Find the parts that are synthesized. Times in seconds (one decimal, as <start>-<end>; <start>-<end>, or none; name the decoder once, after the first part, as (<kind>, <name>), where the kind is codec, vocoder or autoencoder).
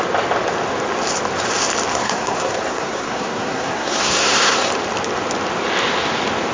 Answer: 1.9-4.7 (codec, SNAC)